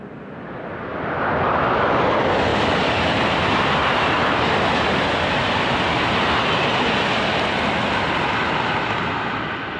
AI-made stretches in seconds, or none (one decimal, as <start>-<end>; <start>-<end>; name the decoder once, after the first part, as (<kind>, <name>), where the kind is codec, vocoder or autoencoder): none